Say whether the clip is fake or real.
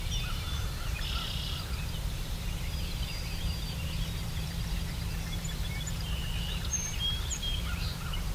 fake